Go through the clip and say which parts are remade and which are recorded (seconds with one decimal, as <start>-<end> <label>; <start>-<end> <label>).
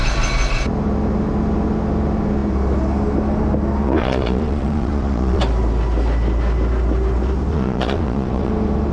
0.0-3.8 recorded; 3.8-5.4 remade; 5.4-7.5 recorded; 7.5-8.5 remade; 8.5-8.9 recorded